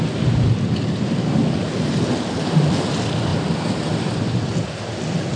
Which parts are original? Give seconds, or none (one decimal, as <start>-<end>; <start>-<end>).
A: 0.0-5.4

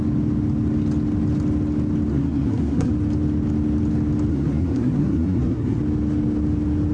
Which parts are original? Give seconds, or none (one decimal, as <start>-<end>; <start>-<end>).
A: 0.0-2.1; 2.9-4.3; 5.8-6.9